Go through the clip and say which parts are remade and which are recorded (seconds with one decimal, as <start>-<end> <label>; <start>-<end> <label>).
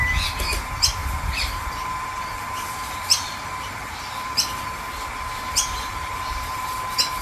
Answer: 0.0-1.0 recorded; 1.0-4.6 remade; 4.6-5.5 recorded; 5.5-6.7 remade; 6.7-7.2 recorded